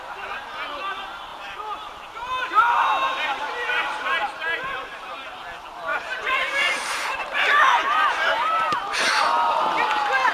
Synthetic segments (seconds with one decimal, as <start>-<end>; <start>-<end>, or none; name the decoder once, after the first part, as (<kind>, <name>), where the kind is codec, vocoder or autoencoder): 1.3-2.7 (vocoder, BigVGAN v2); 4.9-5.4; 5.9-9.2